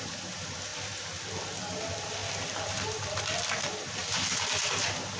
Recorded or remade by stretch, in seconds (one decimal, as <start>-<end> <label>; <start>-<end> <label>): 0.0-0.7 remade; 0.7-1.7 recorded; 1.7-5.2 remade